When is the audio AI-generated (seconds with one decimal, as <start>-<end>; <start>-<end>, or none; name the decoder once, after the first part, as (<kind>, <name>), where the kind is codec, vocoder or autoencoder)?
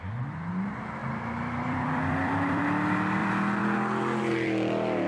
1.0-2.6 (vocoder, BigVGAN v2); 3.2-5.1